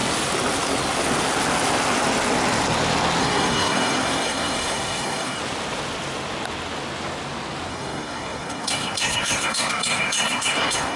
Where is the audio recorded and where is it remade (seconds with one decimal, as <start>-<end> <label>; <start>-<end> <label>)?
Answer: 0.0-3.2 recorded; 3.2-5.4 remade; 5.4-7.7 recorded; 7.7-11.0 remade